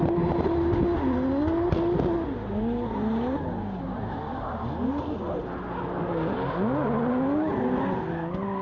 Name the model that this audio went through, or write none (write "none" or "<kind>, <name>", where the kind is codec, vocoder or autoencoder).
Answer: none